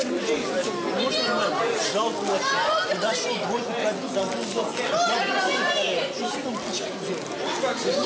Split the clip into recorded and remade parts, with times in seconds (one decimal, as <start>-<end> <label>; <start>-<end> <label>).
0.0-8.1 recorded